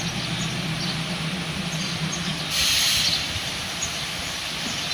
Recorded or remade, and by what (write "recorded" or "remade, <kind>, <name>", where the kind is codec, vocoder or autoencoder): recorded